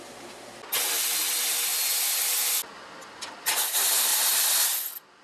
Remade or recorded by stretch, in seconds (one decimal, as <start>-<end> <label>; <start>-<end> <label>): 0.0-5.2 recorded